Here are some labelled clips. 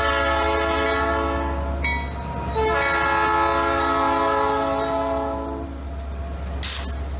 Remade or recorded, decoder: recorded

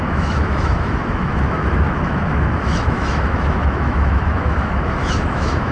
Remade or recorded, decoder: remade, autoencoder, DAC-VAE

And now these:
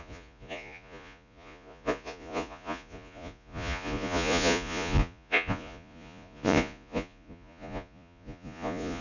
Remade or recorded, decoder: remade, vocoder, Vocos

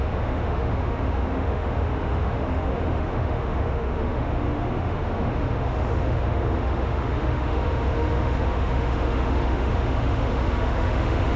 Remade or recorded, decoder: remade, autoencoder, DAC-VAE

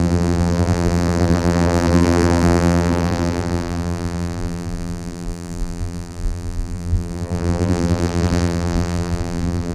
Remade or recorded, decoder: remade, vocoder, BigVGAN v2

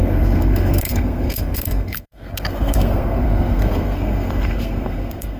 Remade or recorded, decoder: remade, codec, SNAC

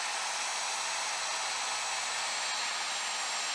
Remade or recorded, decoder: recorded